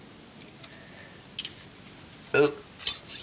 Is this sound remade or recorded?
recorded